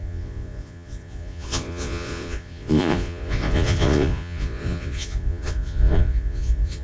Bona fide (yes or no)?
no